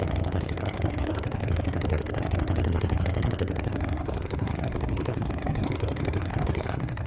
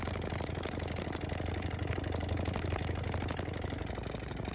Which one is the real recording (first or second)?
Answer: second